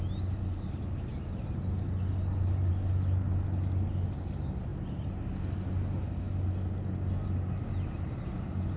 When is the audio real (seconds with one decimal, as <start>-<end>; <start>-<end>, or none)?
0.0-8.8